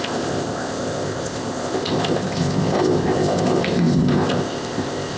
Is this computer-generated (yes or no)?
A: yes